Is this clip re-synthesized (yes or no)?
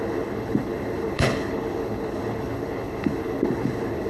yes